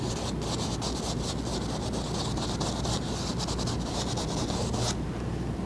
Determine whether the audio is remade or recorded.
recorded